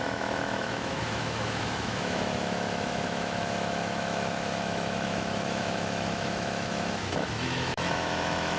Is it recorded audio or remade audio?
remade